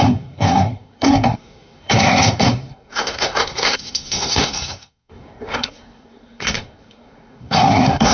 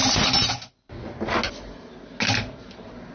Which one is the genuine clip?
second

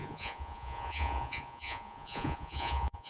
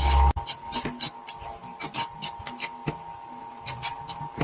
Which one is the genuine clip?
second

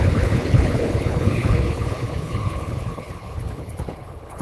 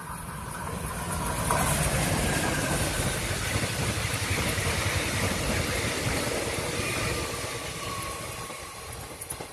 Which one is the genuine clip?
second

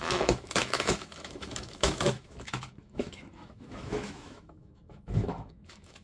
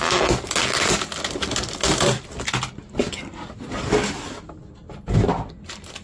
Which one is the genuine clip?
second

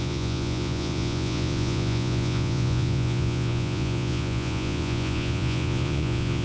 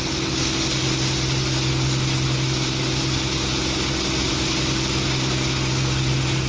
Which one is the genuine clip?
second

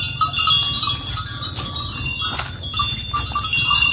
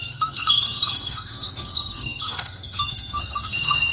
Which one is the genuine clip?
first